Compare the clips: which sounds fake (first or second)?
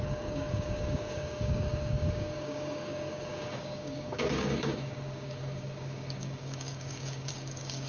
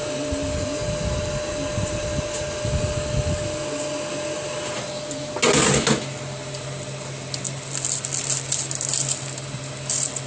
first